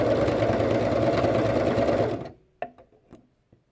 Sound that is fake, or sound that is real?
real